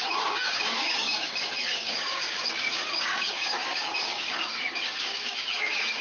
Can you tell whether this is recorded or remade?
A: remade